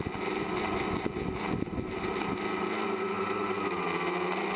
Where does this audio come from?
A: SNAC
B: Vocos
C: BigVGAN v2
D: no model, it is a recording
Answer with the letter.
D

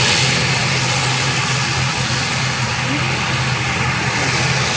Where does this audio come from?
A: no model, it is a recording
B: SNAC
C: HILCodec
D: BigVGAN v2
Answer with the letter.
A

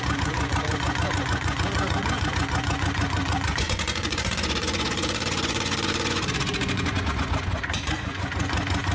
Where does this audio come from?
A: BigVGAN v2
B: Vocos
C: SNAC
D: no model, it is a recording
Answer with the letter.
B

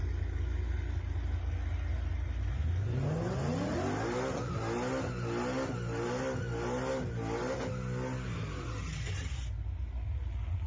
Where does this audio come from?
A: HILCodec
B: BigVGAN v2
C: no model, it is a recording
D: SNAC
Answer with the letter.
C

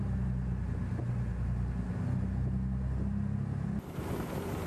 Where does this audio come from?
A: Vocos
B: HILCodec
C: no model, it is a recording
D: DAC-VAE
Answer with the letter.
C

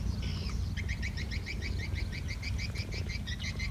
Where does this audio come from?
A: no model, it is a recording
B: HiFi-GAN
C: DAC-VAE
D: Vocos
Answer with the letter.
A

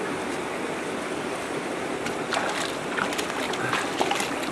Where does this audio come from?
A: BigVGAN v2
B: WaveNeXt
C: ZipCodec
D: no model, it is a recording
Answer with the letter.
D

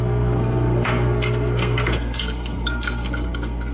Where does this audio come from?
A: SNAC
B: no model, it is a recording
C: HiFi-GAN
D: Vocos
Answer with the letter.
A